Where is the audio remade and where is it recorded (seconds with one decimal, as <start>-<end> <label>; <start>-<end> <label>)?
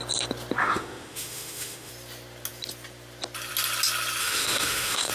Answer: 0.0-0.6 recorded; 0.6-1.9 remade; 1.9-4.2 recorded; 4.2-5.1 remade